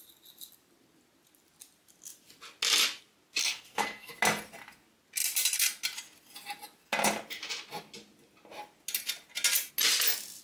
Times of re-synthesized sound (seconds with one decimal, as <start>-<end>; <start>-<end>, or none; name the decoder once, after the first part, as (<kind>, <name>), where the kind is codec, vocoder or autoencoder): 3.4-4.1 (codec, SNAC)